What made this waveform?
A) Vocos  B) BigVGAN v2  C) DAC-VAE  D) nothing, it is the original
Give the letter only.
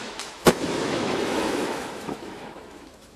C